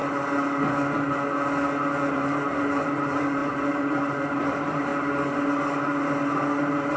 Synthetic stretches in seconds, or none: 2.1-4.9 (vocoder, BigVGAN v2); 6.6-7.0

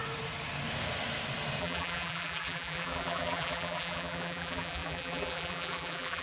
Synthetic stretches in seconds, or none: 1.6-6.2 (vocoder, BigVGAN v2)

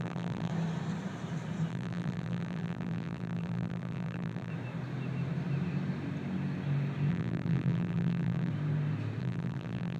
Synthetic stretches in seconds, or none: 0.0-0.5 (vocoder, BigVGAN v2); 1.7-4.5; 7.1-8.5; 9.2-10.0

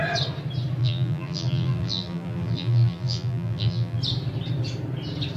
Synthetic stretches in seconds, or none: 0.8-4.0 (vocoder, BigVGAN v2)

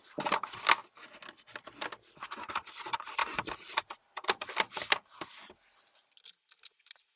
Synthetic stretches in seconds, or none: 3.2-5.4 (vocoder, BigVGAN v2)